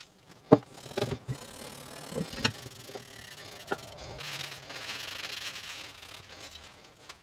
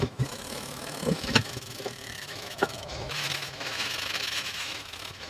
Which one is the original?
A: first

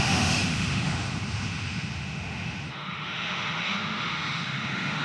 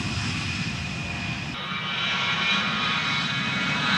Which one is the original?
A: second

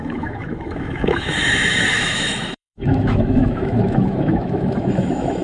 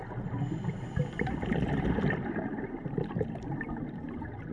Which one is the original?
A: second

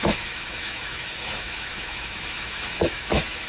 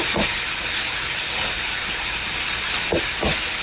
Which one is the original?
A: second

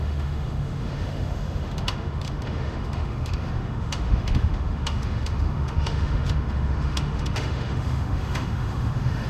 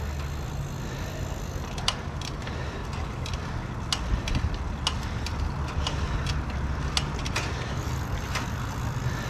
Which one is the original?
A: second